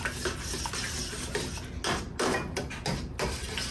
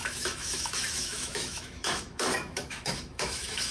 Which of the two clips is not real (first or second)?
second